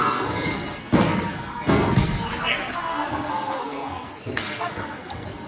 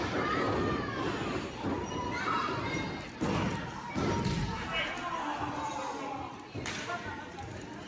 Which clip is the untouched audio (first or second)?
second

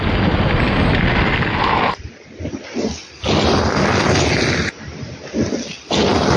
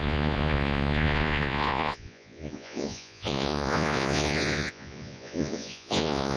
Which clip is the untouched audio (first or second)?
first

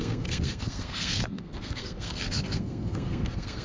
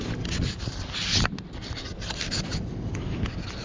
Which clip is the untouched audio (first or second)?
second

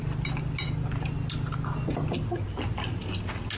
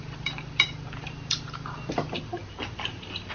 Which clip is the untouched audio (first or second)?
first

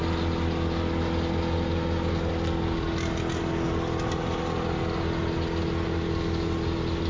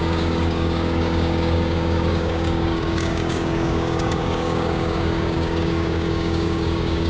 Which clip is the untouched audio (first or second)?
first